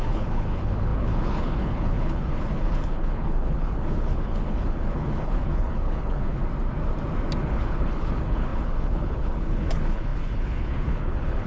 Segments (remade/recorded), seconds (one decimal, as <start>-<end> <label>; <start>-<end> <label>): 0.0-6.4 remade; 6.4-7.4 recorded; 7.4-11.5 remade